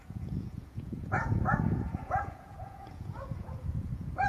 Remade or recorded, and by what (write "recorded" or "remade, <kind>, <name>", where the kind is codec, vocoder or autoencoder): remade, vocoder, Vocos